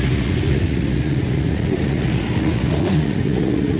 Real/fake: fake